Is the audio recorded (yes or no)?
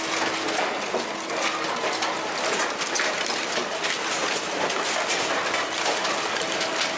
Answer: yes